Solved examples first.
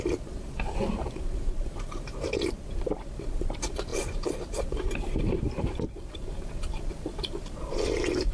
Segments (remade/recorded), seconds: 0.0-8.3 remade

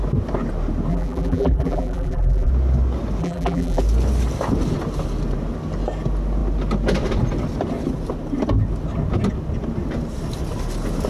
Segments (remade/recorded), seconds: 0.0-0.9 recorded; 0.9-2.5 remade; 2.5-3.2 recorded; 3.2-3.8 remade; 3.8-11.1 recorded

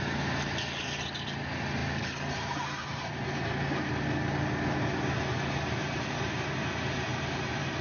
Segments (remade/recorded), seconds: 0.0-5.8 recorded; 5.8-7.8 remade

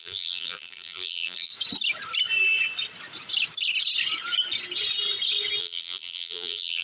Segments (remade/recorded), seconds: 0.0-1.5 remade; 1.5-5.6 recorded; 5.6-6.8 remade

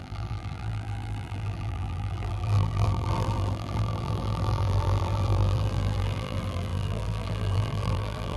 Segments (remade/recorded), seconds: 0.0-8.4 remade